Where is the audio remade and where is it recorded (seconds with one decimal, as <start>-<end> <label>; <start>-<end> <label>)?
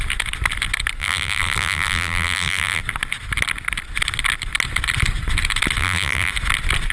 0.0-1.0 recorded; 1.0-2.8 remade; 2.8-5.8 recorded; 5.8-6.3 remade; 6.3-6.9 recorded